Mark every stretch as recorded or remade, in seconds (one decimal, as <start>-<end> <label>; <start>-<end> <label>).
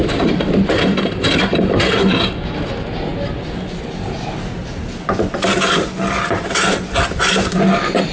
0.0-8.1 recorded